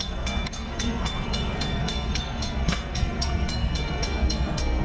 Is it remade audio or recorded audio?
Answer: remade